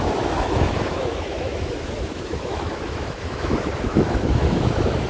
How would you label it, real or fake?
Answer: fake